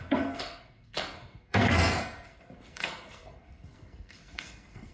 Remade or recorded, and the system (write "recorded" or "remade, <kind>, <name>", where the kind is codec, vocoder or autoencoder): remade, codec, SNAC